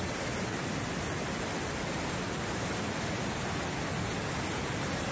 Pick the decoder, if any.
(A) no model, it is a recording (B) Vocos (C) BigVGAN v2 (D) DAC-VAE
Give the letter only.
A